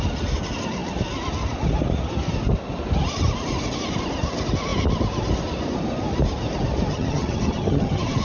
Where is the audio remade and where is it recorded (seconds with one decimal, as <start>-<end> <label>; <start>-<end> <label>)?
0.0-6.9 recorded; 6.9-8.2 remade